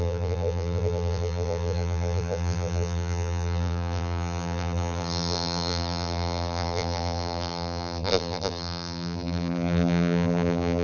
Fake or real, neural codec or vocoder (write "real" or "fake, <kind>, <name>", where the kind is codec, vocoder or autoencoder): fake, vocoder, BigVGAN v2